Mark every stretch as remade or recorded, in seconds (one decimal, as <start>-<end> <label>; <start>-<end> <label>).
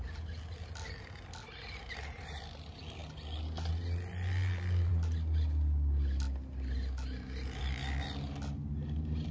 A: 0.0-1.8 recorded; 1.8-2.4 remade; 2.4-9.3 recorded